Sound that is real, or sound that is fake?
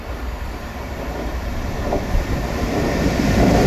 fake